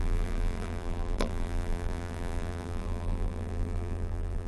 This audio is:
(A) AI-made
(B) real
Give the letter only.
A